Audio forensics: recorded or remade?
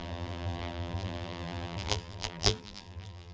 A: remade